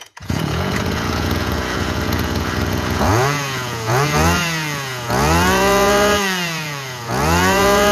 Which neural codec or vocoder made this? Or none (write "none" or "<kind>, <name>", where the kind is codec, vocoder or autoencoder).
vocoder, Vocos